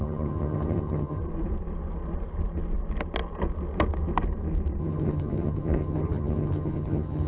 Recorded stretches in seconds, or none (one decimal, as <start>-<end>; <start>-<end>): 1.2-4.8